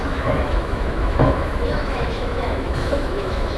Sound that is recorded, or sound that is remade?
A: remade